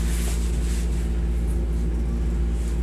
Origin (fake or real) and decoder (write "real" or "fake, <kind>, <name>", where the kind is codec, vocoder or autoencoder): real